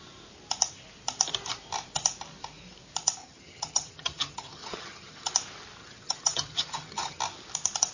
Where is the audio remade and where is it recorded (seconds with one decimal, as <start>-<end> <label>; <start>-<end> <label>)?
0.0-3.2 recorded; 3.2-5.3 remade; 5.3-5.8 recorded; 5.8-7.2 remade; 7.2-7.9 recorded